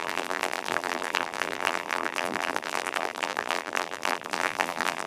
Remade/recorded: remade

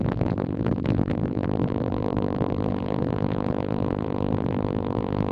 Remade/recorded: remade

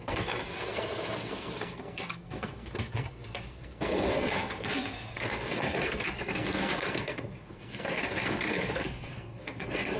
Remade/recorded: remade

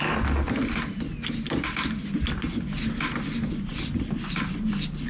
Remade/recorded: recorded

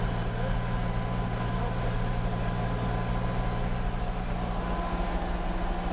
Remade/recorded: recorded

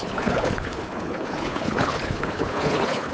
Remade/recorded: remade